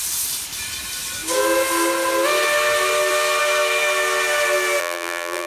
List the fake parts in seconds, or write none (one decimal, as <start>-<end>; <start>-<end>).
4.8-5.5